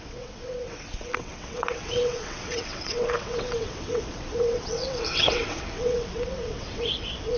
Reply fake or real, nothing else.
fake